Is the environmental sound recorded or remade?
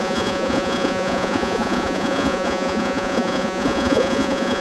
remade